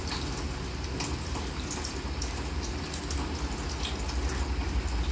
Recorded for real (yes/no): yes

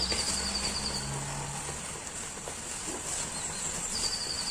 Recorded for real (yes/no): yes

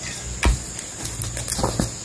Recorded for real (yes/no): yes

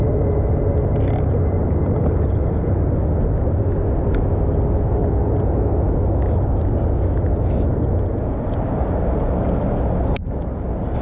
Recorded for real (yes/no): yes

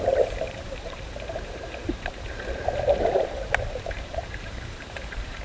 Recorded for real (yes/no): no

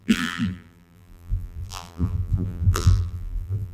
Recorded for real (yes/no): no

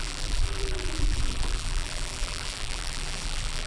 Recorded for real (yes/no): no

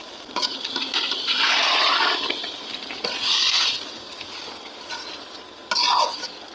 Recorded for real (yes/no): yes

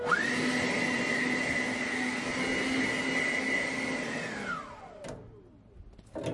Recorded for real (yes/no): yes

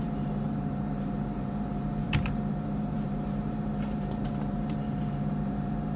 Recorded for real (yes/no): no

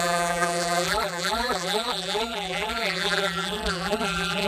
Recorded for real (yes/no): no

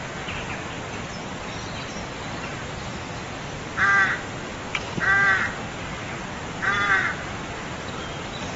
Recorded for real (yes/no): yes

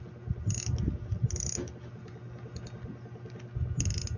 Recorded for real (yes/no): yes